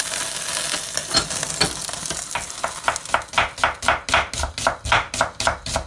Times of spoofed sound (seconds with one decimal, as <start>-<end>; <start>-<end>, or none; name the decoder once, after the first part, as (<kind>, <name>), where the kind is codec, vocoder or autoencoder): none

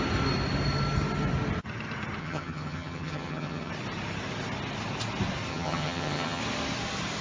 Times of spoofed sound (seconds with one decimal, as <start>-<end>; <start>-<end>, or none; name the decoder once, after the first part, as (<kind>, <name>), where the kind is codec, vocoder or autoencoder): 2.2-3.7 (vocoder, HiFi-GAN); 5.5-6.4

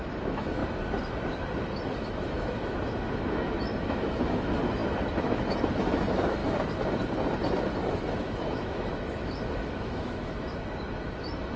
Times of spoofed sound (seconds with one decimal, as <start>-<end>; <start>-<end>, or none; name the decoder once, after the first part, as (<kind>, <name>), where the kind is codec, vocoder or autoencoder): 0.0-0.6 (autoencoder, DAC-VAE); 1.8-6.4; 7.9-10.5

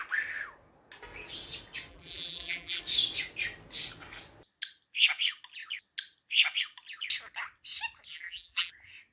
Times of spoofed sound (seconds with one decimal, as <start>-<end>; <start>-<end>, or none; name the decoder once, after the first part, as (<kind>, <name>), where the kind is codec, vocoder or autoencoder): 1.9-2.8 (vocoder, BigVGAN v2); 8.1-8.7

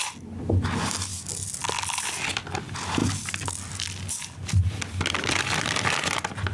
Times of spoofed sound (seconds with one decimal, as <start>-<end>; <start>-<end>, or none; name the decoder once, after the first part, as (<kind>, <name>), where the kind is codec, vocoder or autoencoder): none